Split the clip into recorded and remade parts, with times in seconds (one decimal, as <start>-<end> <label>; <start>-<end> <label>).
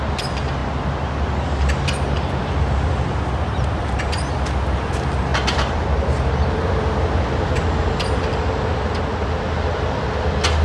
0.0-5.3 recorded; 5.3-6.7 remade; 6.7-10.6 recorded